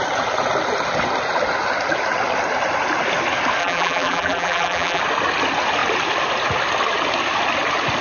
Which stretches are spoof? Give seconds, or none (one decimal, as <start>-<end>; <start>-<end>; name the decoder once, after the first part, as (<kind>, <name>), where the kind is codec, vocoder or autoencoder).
3.6-5.0 (vocoder, BigVGAN v2)

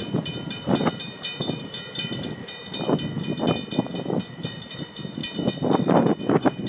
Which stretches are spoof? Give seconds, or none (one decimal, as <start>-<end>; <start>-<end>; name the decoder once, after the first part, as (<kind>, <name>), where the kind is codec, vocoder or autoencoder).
0.0-2.6 (vocoder, BigVGAN v2); 3.9-5.2; 6.2-6.7

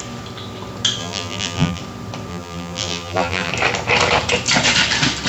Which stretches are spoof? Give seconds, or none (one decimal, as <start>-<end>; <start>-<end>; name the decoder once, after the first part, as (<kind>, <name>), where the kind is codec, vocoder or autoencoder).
1.0-1.8 (vocoder, BigVGAN v2); 2.3-3.5

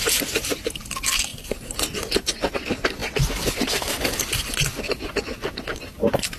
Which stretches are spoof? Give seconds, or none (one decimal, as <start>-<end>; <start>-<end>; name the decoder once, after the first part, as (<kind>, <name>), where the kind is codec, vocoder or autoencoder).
none